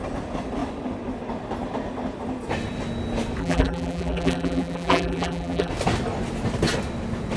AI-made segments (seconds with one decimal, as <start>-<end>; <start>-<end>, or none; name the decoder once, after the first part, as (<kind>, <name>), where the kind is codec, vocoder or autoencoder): 3.4-5.7 (vocoder, BigVGAN v2)

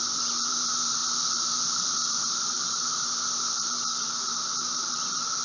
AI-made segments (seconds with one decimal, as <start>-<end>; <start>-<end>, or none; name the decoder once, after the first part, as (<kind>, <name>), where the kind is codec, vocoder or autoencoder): 0.0-3.0 (vocoder, BigVGAN v2); 3.5-5.4